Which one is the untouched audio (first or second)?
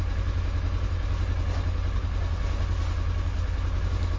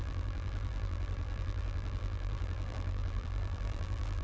first